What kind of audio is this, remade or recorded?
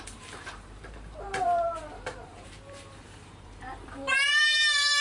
remade